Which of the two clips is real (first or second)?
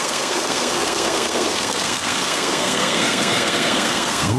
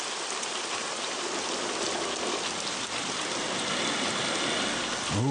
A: second